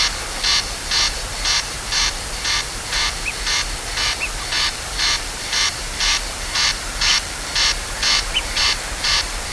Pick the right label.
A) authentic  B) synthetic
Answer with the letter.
B